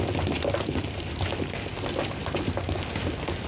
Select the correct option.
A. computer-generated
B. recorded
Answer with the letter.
B